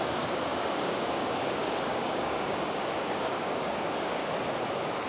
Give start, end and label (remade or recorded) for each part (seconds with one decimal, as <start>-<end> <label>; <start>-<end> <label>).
0.0-4.2 remade; 4.2-5.1 recorded